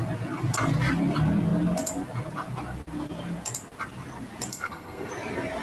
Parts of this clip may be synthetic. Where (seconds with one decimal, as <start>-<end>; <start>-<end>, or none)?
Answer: 4.5-5.1